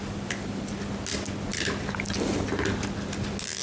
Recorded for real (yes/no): yes